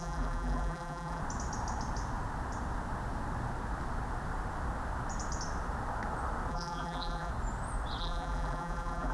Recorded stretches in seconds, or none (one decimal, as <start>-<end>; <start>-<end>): 1.2-6.5; 7.3-8.0